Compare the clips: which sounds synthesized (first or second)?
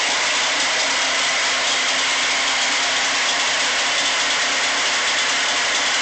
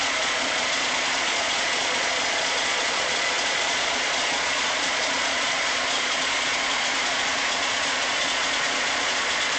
second